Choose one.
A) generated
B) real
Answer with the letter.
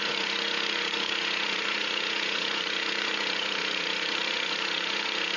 A